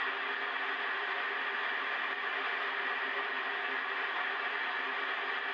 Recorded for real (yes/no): yes